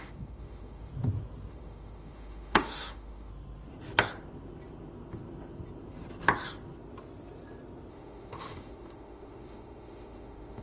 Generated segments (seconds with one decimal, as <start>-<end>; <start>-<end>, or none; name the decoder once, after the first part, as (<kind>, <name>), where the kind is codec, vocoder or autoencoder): 0.0-0.9 (autoencoder, DAC-VAE); 1.5-3.3; 7.9-10.6